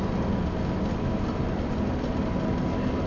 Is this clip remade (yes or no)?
no